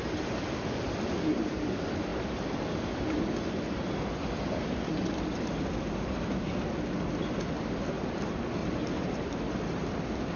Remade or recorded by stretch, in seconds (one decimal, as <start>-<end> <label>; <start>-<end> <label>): 0.0-8.6 recorded; 8.6-9.4 remade; 9.4-10.4 recorded